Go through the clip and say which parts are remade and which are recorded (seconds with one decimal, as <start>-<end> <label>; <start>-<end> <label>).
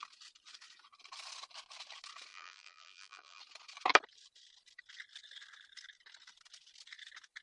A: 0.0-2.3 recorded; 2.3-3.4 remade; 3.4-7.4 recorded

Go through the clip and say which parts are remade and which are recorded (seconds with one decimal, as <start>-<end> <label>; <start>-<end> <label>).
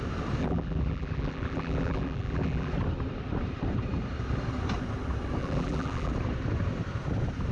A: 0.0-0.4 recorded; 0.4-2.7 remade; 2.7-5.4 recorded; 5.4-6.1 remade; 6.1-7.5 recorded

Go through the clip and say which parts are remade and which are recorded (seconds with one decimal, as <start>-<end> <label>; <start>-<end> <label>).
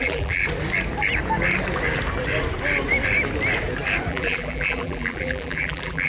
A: 0.0-0.4 remade; 0.4-4.1 recorded; 4.1-6.1 remade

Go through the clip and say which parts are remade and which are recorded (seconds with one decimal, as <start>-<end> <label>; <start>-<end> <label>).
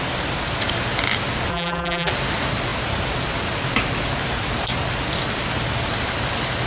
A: 0.0-1.5 recorded; 1.5-2.1 remade; 2.1-6.7 recorded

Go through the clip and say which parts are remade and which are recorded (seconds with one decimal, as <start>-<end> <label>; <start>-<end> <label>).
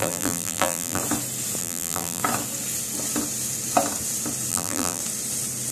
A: 0.0-1.0 remade; 1.0-1.6 recorded; 1.6-2.2 remade; 2.2-4.5 recorded; 4.5-5.0 remade; 5.0-5.7 recorded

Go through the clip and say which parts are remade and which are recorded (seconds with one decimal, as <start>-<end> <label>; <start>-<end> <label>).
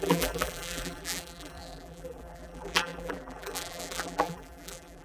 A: 0.0-5.0 remade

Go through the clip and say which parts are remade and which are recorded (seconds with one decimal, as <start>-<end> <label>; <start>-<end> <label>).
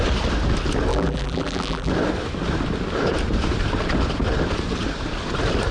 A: 0.0-0.9 recorded; 0.9-1.9 remade; 1.9-5.7 recorded